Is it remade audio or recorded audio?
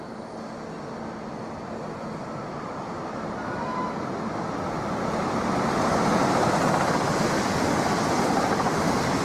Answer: recorded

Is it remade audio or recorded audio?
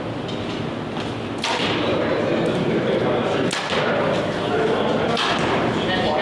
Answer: recorded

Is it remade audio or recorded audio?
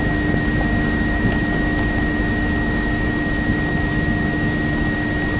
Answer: recorded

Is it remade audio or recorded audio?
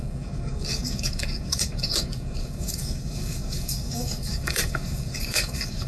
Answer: remade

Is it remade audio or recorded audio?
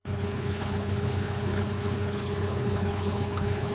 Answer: remade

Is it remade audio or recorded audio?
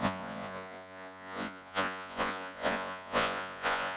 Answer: remade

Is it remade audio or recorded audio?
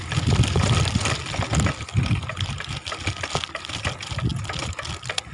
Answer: recorded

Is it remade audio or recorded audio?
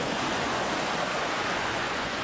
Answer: remade